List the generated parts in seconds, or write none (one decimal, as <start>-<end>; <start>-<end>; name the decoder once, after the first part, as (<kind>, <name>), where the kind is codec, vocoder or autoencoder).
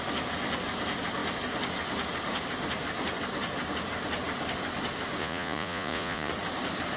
5.2-6.3 (vocoder, Vocos)